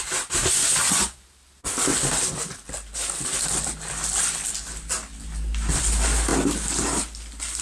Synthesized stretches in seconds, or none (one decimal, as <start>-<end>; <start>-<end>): none